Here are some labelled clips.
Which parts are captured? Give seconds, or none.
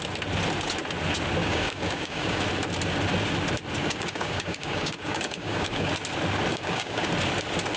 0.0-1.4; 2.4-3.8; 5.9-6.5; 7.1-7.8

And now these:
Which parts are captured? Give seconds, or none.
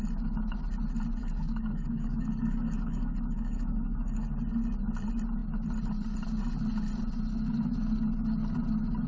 0.0-1.2; 4.3-9.1